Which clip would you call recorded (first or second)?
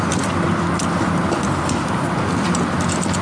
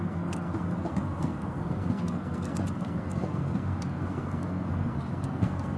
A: first